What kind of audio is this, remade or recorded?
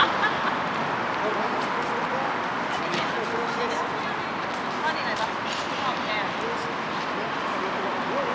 recorded